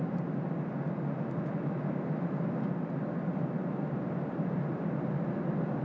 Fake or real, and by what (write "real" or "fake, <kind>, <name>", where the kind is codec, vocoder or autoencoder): real